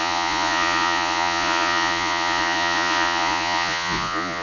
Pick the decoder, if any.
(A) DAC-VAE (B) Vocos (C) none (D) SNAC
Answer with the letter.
B